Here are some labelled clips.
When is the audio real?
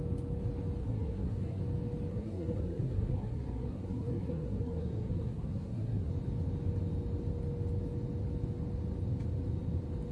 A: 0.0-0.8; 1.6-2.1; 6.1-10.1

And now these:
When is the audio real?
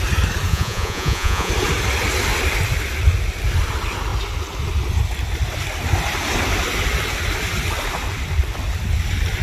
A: 0.0-0.5; 1.5-9.4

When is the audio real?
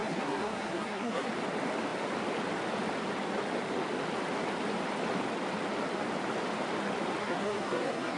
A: 1.3-7.2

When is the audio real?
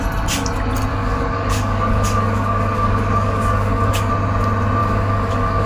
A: 0.0-0.9; 4.1-4.8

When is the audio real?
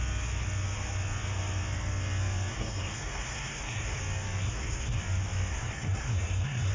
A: 0.0-2.5; 4.0-4.4; 5.0-5.5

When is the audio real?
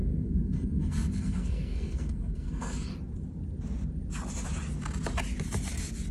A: 2.9-6.1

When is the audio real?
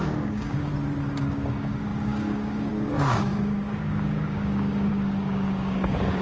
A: 0.7-1.2